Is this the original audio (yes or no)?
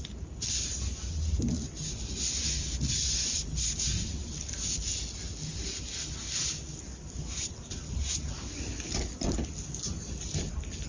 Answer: yes